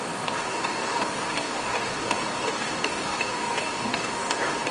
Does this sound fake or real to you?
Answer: fake